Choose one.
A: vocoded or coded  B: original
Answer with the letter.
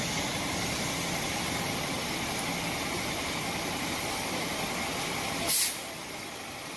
B